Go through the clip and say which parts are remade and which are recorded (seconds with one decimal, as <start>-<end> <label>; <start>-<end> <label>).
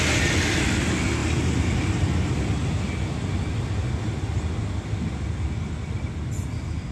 0.0-6.9 recorded